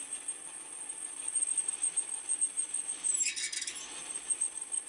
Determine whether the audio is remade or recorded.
recorded